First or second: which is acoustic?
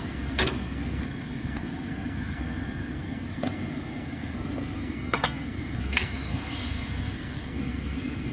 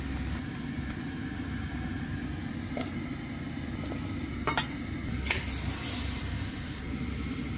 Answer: second